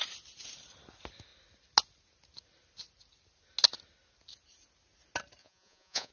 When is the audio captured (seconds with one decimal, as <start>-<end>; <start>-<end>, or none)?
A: 0.0-5.4